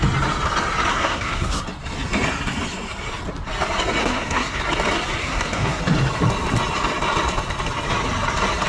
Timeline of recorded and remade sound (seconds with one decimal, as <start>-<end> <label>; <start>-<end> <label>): 0.0-0.9 recorded; 0.9-1.6 remade; 1.6-4.0 recorded; 4.0-4.6 remade; 4.6-5.2 recorded; 5.2-5.8 remade; 5.8-8.7 recorded